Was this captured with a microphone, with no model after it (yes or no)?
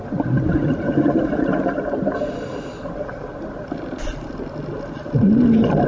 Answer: yes